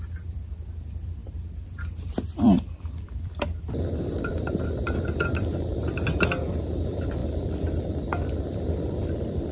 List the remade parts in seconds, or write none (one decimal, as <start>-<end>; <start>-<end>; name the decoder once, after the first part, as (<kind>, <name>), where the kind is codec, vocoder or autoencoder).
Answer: 0.0-9.5 (vocoder, BigVGAN v2)